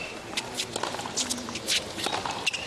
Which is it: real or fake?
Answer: real